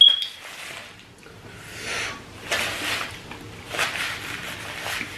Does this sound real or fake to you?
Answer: real